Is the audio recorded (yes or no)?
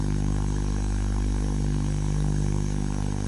no